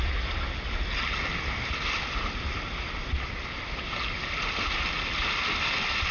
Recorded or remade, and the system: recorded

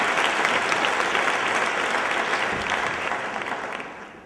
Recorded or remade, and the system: recorded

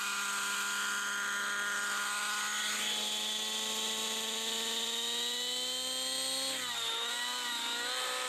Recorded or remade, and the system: recorded